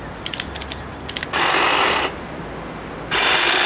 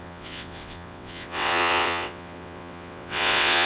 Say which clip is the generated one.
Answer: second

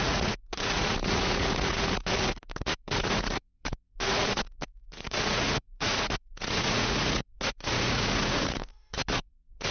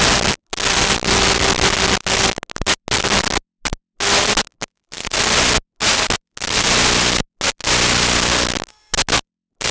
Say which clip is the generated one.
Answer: first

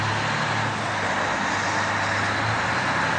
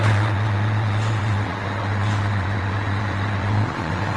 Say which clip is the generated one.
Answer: second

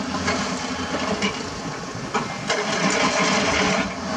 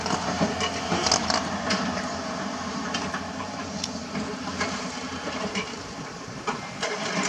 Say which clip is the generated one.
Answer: second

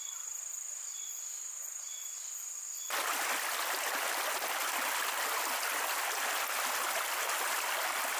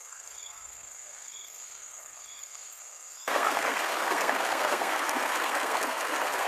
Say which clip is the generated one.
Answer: second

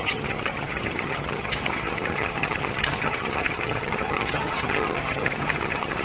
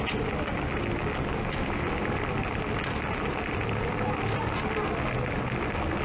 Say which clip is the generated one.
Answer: first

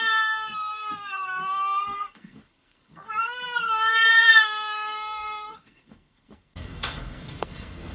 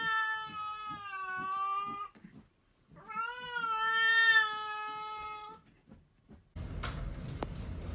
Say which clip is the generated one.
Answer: first